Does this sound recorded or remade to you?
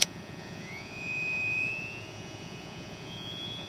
remade